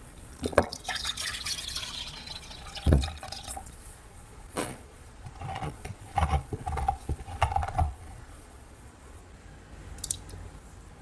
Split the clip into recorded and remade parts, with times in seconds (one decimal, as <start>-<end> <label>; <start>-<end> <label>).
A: 0.0-9.2 remade; 9.2-11.0 recorded